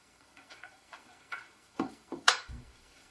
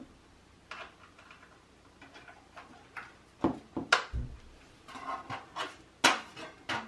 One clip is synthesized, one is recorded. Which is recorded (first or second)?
second